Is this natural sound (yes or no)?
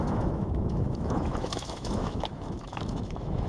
no